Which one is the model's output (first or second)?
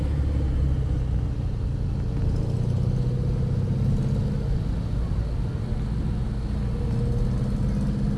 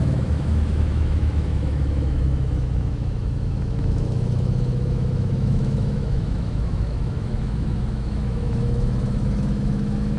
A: second